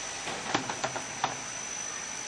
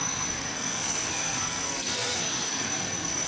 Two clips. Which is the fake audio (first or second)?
second